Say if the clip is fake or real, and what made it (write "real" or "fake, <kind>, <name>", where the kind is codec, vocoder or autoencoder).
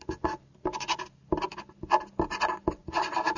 real